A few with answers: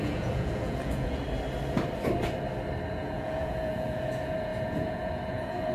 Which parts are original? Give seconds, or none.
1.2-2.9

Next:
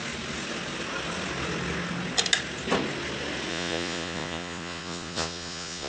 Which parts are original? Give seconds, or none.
0.0-3.5

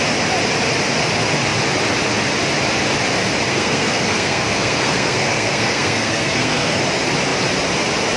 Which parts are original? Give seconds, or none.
0.0-3.5; 6.8-8.2

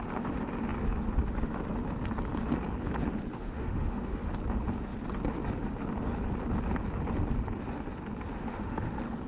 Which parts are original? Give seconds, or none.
0.0-3.3; 4.3-8.3; 8.9-9.3

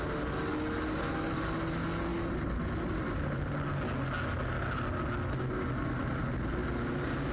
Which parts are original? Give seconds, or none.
0.0-2.1; 3.8-7.3

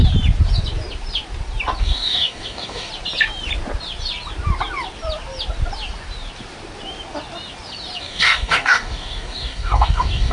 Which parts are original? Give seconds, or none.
0.0-1.8; 2.9-8.0